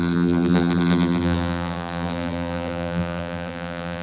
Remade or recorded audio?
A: remade